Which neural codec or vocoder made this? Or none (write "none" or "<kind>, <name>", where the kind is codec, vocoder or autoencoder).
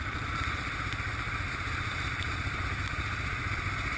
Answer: none